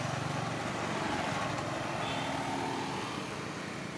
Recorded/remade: recorded